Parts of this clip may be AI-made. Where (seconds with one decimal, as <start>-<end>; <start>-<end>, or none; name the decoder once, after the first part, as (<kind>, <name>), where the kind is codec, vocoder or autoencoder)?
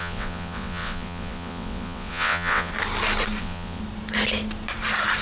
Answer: 0.0-2.7 (vocoder, WaveNeXt); 3.4-3.8